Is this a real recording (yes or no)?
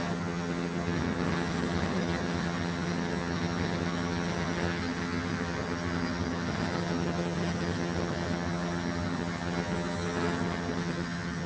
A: no